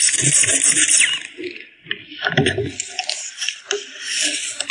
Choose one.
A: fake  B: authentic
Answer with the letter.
B